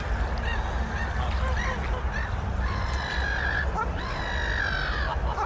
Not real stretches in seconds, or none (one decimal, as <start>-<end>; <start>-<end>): none